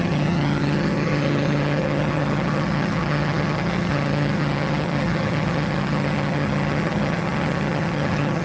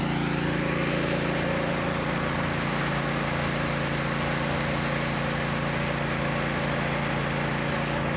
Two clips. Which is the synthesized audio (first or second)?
first